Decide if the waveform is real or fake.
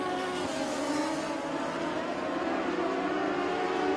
real